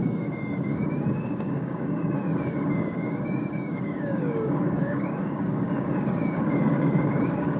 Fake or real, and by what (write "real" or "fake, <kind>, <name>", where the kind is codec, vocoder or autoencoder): fake, codec, DAC